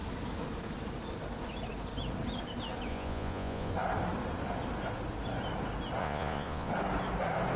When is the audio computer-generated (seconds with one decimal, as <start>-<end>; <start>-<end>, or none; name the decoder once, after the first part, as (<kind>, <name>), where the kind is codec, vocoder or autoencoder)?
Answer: 2.9-3.7 (vocoder, Vocos); 6.0-6.7